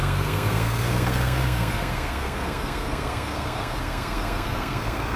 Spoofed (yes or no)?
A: yes